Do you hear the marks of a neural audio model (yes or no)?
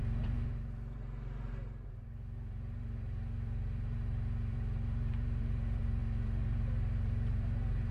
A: yes